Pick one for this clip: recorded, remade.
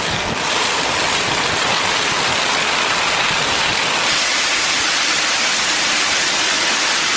recorded